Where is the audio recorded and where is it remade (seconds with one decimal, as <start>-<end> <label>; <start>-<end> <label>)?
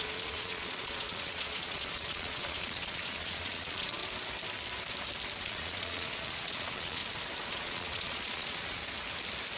0.0-4.0 remade; 4.0-5.4 recorded; 5.4-7.0 remade; 7.0-7.5 recorded; 7.5-8.8 remade; 8.8-9.6 recorded